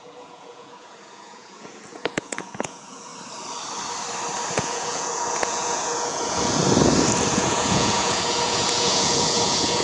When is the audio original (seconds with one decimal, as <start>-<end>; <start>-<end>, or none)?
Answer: 3.1-4.5; 6.6-7.3